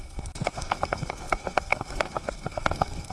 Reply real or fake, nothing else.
fake